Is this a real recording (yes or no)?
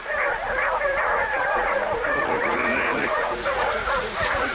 no